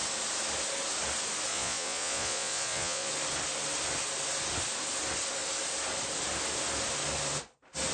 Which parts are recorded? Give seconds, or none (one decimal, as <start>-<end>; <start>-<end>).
0.0-1.5; 3.1-7.9